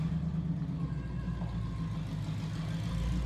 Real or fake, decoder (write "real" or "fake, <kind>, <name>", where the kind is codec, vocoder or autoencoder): real